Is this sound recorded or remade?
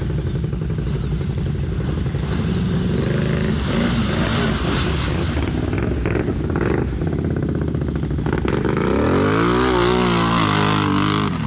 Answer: recorded